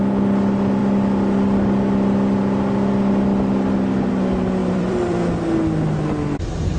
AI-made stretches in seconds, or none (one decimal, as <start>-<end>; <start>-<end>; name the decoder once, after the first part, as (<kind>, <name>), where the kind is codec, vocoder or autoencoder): 4.6-5.3 (vocoder, BigVGAN v2)